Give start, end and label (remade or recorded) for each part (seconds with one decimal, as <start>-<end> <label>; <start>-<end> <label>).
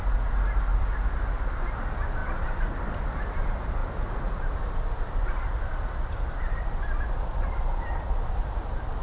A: 0.0-0.7 recorded; 0.7-1.5 remade; 1.5-2.2 recorded; 2.2-3.0 remade; 3.0-3.8 recorded; 3.8-8.5 remade; 8.5-9.0 recorded